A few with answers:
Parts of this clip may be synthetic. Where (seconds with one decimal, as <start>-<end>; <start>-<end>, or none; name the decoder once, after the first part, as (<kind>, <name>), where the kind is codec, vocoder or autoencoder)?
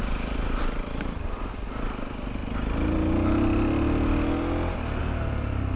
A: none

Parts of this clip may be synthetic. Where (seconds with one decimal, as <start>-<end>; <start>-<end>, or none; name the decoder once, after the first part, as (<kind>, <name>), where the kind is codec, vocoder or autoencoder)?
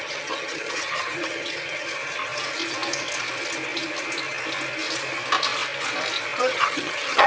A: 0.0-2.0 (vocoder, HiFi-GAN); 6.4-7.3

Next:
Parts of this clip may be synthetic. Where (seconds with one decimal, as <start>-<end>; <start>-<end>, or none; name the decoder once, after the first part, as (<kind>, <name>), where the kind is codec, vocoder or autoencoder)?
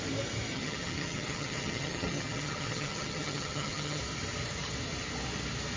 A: 0.5-4.0 (vocoder, HiFi-GAN)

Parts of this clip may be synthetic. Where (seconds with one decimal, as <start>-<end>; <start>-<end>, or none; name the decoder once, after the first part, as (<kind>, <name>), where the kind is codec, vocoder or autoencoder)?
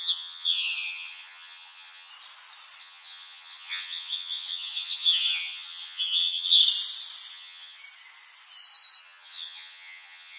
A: 0.0-2.1 (vocoder, HiFi-GAN); 2.8-6.6; 7.3-7.8; 9.0-10.4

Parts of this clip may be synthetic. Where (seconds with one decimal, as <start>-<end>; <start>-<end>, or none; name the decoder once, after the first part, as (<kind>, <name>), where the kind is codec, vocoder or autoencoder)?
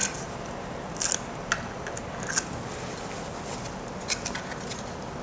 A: none